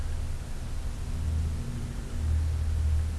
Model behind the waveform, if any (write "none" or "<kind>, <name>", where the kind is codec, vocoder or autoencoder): none